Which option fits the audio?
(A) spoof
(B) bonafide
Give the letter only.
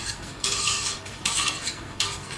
A